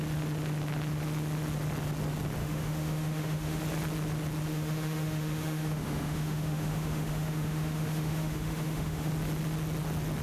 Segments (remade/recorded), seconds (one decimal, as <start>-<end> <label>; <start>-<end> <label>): 0.0-2.4 recorded; 2.4-3.6 remade; 3.6-4.5 recorded; 4.5-9.1 remade; 9.1-10.2 recorded

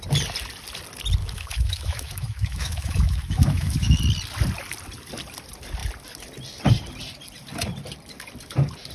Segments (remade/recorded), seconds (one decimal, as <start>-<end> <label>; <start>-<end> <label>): 0.0-1.2 recorded; 1.2-4.0 remade; 4.0-8.9 recorded

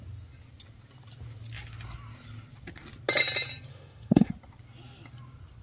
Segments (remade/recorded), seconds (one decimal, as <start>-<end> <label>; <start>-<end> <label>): 0.0-3.7 recorded; 3.7-4.3 remade; 4.3-5.6 recorded